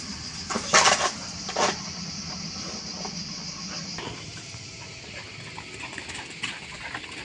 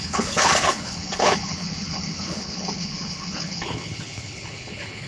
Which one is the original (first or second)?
first